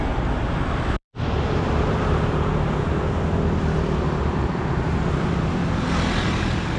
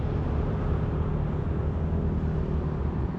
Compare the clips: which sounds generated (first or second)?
first